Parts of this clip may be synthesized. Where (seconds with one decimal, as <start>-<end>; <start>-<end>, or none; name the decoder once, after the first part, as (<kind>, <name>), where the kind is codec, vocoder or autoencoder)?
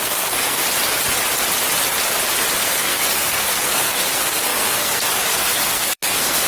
0.0-0.6 (codec, SNAC); 2.6-6.5